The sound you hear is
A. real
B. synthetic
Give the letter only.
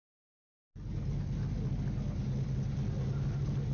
A